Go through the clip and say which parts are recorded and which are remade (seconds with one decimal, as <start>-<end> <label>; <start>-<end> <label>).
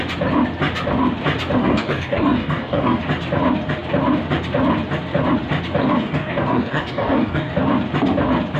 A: 0.0-1.6 recorded; 1.6-3.0 remade; 3.0-5.8 recorded; 5.8-7.5 remade; 7.5-8.6 recorded